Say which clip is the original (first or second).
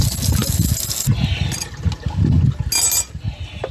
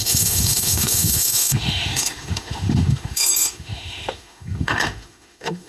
first